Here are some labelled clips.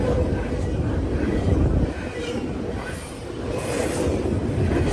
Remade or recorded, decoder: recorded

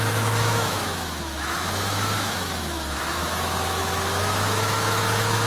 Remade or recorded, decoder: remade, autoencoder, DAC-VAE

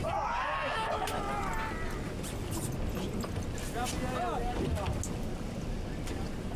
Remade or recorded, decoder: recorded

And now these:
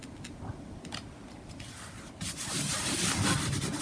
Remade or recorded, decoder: recorded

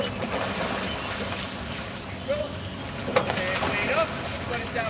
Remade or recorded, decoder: recorded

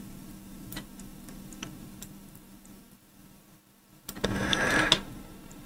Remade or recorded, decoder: recorded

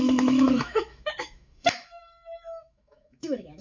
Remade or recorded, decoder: remade, autoencoder, DAC-VAE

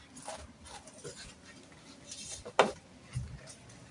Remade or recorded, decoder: recorded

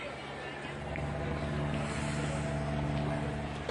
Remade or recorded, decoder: recorded